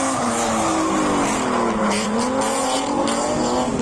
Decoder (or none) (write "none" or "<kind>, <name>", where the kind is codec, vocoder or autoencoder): none